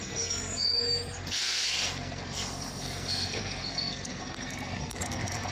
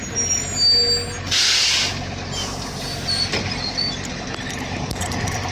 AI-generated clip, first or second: first